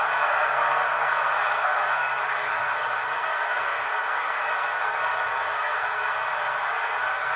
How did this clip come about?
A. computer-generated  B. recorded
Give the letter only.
A